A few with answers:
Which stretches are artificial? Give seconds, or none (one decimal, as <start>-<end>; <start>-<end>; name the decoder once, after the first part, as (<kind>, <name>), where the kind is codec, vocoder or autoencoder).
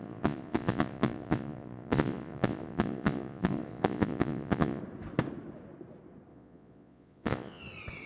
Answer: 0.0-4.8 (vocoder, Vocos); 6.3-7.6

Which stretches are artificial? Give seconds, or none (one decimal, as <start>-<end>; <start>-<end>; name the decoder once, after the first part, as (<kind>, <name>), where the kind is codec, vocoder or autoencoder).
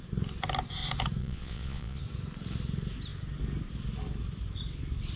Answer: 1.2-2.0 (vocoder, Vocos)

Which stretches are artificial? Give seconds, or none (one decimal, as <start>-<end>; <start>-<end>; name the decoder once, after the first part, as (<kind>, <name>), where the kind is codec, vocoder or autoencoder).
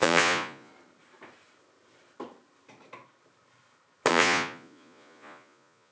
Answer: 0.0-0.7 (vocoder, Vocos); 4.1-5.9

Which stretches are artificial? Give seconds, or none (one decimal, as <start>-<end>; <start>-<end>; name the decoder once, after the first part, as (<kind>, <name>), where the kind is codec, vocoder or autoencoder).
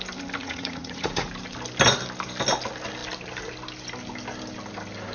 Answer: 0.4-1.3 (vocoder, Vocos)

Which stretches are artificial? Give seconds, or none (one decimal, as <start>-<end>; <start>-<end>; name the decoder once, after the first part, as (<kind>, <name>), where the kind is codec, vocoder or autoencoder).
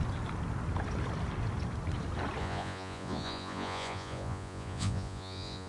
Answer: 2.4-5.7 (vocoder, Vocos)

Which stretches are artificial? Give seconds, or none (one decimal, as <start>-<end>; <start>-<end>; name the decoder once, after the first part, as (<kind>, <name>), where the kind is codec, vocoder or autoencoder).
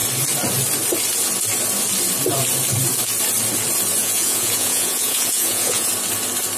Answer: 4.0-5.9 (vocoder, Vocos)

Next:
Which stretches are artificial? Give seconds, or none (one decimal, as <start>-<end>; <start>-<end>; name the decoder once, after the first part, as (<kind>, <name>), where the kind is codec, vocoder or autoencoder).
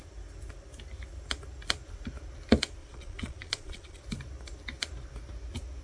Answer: 2.8-4.0 (vocoder, Vocos)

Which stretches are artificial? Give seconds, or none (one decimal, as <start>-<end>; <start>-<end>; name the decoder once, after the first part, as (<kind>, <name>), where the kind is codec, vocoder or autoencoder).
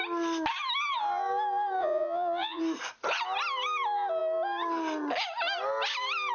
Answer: 1.8-2.6 (vocoder, Vocos)